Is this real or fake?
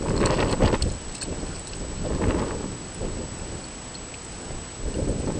real